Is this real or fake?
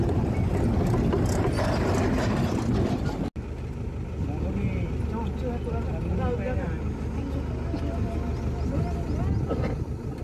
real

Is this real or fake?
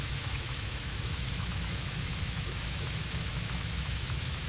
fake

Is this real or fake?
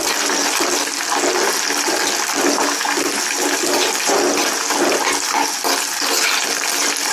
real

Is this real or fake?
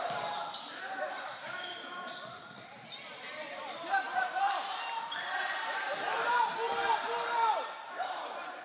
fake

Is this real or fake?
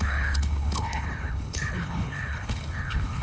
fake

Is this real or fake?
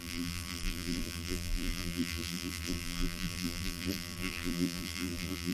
fake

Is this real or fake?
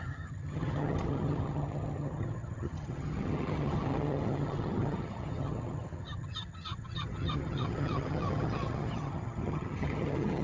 fake